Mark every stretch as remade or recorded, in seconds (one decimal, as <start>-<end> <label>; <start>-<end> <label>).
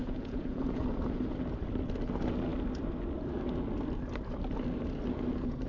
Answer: 0.0-0.8 remade; 0.8-5.7 recorded